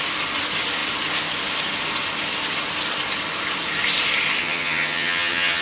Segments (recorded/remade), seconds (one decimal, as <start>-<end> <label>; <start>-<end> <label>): 0.0-4.4 recorded; 4.4-5.6 remade